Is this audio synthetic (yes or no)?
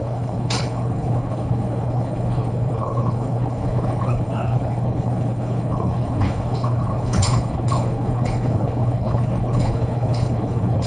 yes